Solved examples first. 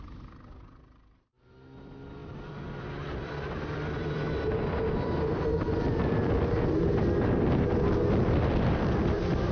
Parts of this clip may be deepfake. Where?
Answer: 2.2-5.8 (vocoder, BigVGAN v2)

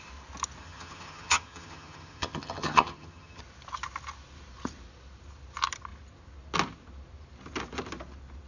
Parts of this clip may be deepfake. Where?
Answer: 0.6-3.4 (vocoder, HiFi-GAN)

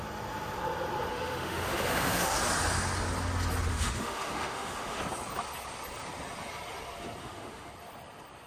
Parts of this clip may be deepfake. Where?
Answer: 1.1-2.4 (autoencoder, DAC-VAE); 3.7-5.0; 7.2-7.7

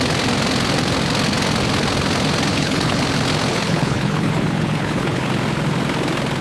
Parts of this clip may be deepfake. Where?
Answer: 2.5-3.0 (codec, HILCodec); 3.5-5.3

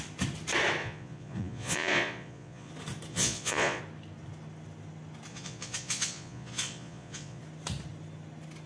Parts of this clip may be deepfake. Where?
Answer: 0.8-2.7 (vocoder, Vocos); 3.1-3.8; 5.3-7.4

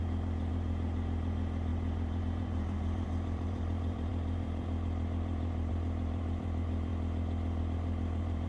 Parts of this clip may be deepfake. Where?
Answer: 0.0-6.9 (vocoder, BigVGAN v2); 7.6-8.5